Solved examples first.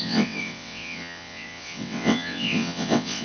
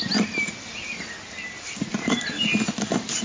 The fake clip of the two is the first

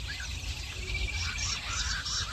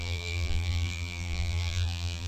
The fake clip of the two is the second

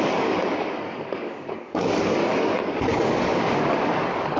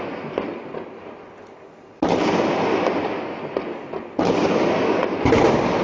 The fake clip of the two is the first